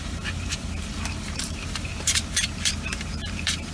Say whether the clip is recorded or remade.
remade